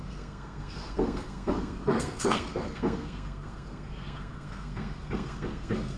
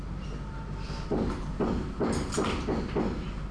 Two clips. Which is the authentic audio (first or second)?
second